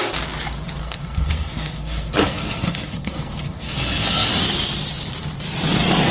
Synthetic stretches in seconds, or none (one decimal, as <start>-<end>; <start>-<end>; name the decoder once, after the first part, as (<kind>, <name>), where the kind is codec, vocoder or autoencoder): 0.8-4.3 (codec, SNAC)